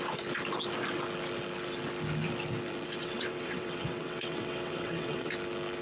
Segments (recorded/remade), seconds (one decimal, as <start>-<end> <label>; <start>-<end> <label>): 0.0-3.0 recorded; 3.0-5.3 remade; 5.3-5.8 recorded